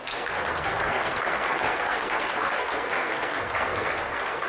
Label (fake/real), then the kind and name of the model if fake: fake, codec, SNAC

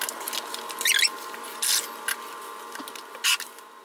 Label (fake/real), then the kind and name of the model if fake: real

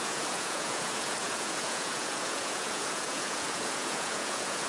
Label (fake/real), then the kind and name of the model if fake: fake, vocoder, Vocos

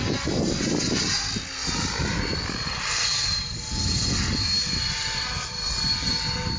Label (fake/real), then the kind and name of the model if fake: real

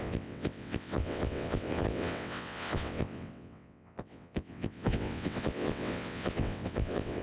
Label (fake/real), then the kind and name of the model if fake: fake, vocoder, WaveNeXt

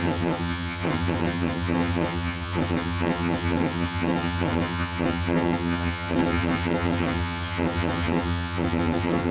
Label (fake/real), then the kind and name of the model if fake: fake, vocoder, HiFi-GAN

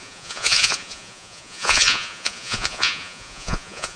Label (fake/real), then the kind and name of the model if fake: fake, vocoder, Vocos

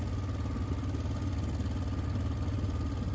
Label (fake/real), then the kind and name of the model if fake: real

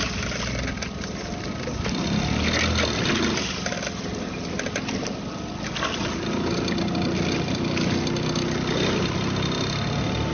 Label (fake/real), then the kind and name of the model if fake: real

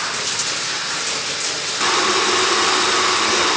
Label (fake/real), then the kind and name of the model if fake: real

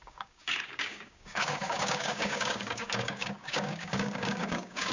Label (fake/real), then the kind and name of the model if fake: fake, codec, DAC